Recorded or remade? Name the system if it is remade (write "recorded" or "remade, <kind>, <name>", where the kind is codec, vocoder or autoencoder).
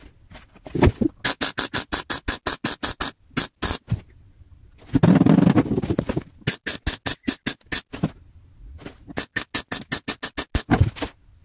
recorded